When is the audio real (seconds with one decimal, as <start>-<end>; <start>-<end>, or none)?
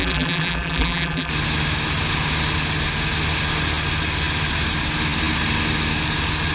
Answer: 1.3-6.5